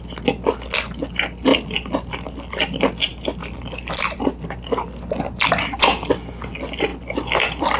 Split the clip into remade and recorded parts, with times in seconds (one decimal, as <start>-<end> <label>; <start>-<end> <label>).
0.0-1.5 recorded; 1.5-2.6 remade; 2.6-3.1 recorded; 3.1-4.2 remade; 4.2-6.9 recorded; 6.9-7.8 remade